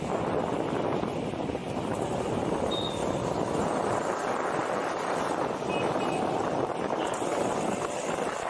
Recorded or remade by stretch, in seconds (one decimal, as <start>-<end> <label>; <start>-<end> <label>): 0.0-4.6 recorded; 4.6-5.4 remade; 5.4-8.5 recorded